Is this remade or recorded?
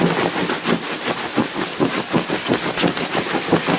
recorded